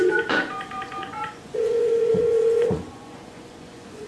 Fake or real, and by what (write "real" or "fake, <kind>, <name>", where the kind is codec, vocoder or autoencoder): fake, vocoder, Vocos